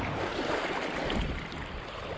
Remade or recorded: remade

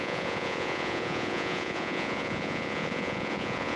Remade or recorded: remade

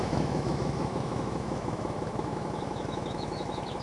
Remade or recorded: remade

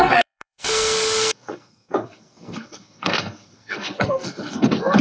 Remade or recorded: remade